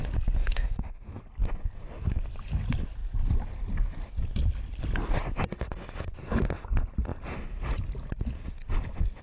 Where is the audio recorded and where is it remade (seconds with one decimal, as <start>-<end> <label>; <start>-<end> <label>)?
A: 0.0-0.4 recorded; 0.4-1.2 remade; 1.2-9.2 recorded